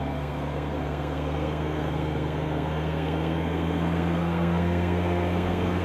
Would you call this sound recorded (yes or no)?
no